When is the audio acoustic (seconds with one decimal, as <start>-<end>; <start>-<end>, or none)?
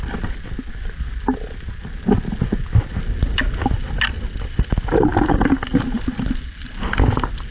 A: 0.0-7.5